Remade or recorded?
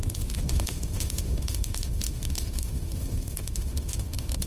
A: remade